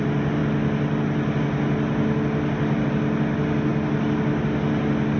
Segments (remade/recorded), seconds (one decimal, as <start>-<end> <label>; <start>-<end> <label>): 0.0-5.2 recorded